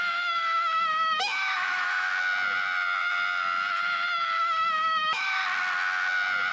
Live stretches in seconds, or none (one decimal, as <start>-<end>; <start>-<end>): 2.1-4.4; 5.4-6.5